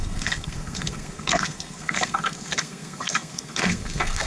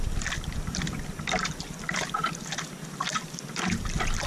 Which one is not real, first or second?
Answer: first